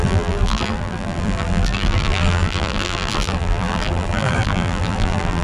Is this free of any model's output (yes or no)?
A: no